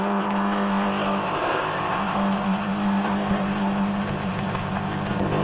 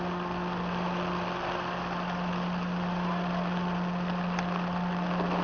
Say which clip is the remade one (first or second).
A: first